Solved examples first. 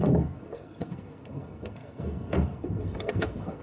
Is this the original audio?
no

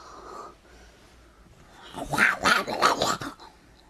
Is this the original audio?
yes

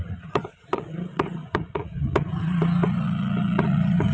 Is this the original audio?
no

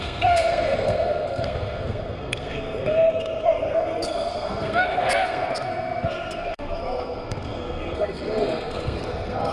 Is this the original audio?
no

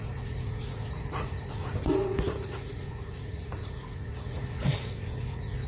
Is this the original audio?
no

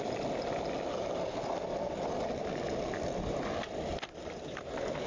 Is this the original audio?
yes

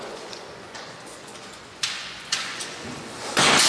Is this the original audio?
no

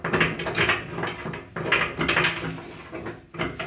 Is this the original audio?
yes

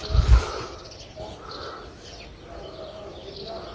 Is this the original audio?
yes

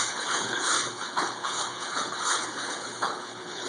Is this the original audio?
no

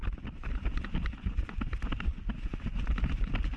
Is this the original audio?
yes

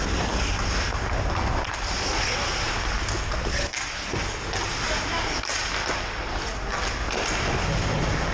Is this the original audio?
yes